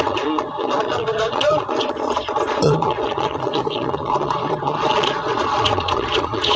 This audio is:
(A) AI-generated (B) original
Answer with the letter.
A